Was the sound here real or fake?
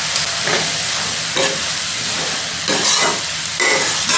real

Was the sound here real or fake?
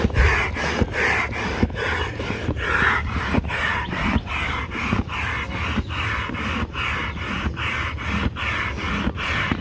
real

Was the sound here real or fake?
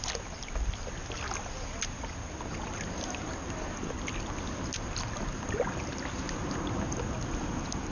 real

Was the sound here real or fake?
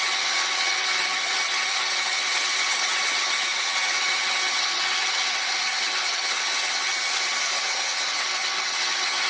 fake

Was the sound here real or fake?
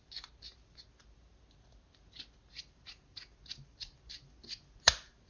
real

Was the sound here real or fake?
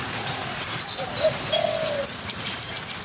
real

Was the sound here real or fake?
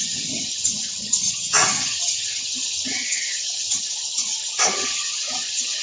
fake